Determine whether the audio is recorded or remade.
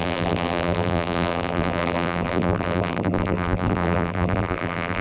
remade